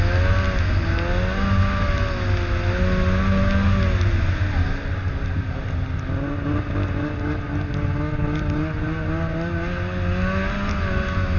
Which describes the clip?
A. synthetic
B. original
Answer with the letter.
B